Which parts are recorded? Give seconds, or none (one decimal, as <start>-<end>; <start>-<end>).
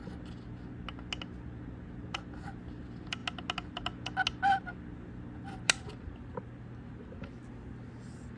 0.0-8.4